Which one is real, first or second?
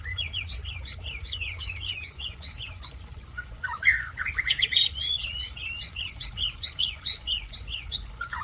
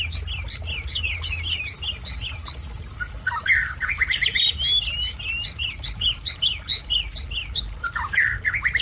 second